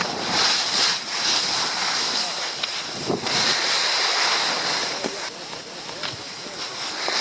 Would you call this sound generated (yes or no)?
no